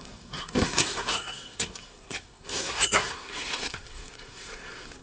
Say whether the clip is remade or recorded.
remade